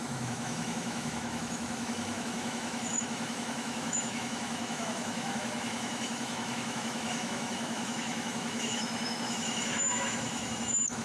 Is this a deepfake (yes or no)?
yes